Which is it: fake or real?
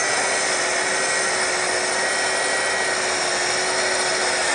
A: real